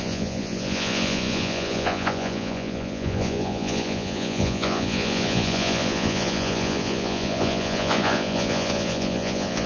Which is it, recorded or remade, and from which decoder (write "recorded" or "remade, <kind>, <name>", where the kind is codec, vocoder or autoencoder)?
remade, vocoder, Vocos